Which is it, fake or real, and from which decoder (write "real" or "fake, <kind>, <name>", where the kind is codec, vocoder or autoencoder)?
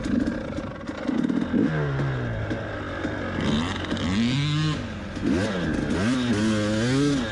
real